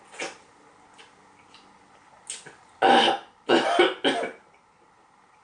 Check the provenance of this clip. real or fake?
real